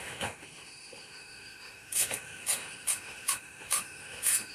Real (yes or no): no